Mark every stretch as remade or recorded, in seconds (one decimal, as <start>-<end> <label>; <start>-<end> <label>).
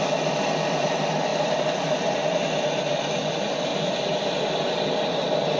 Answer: 0.0-5.6 recorded